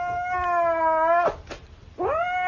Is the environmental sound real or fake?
real